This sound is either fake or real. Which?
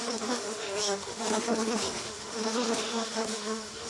fake